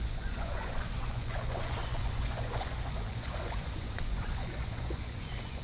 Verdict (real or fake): fake